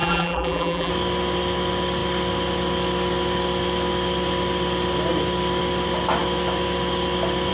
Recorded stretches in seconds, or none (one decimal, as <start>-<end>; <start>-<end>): 0.9-7.5